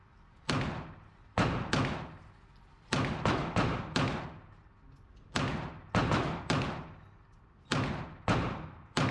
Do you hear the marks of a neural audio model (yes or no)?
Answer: no